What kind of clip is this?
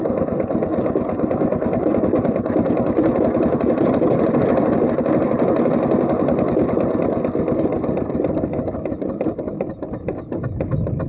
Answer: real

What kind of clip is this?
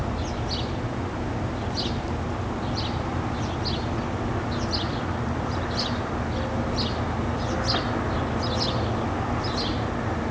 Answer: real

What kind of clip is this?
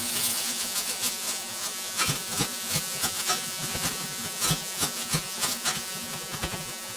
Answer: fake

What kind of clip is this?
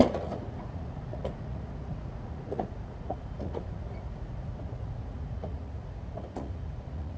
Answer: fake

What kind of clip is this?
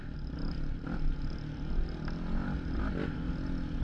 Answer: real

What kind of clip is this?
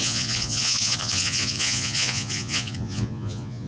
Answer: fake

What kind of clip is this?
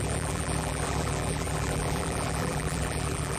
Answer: fake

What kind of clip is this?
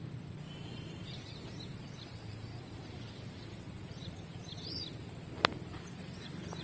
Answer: fake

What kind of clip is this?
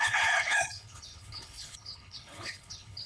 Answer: fake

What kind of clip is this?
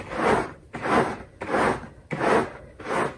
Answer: real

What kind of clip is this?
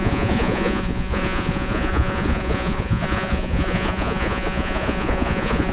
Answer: fake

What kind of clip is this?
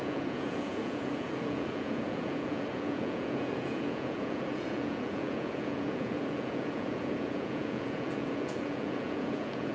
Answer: fake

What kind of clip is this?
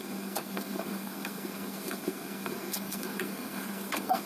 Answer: fake